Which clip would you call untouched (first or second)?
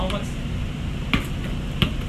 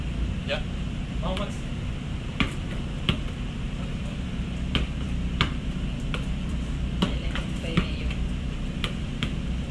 first